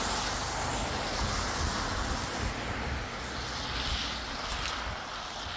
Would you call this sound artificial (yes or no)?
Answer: no